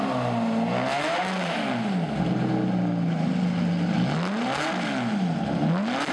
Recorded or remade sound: recorded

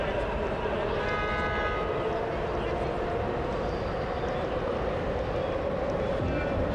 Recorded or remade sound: recorded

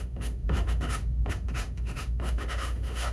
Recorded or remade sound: remade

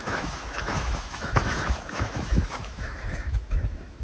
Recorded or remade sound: remade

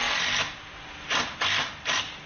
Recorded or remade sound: recorded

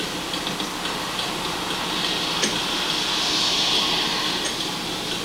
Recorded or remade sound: recorded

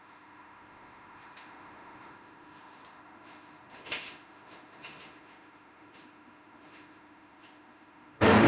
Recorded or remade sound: remade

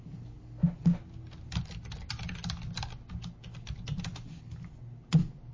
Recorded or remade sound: recorded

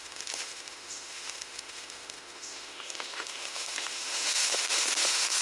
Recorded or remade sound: remade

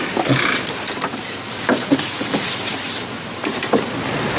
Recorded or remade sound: recorded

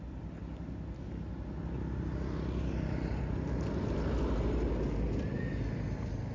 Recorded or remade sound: recorded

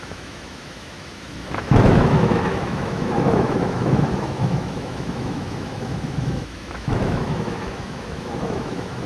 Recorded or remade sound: remade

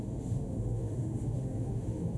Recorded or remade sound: remade